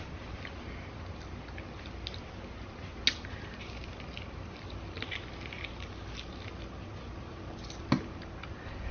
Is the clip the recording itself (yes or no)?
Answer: yes